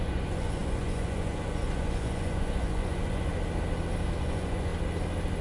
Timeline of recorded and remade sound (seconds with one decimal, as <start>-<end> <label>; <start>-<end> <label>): 0.0-3.3 remade; 3.3-4.2 recorded; 4.2-4.7 remade; 4.7-5.4 recorded